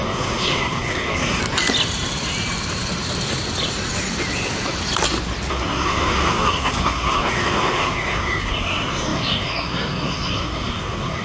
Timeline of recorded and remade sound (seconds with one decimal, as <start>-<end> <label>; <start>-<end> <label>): 0.0-1.4 remade; 1.4-5.5 recorded; 5.5-11.2 remade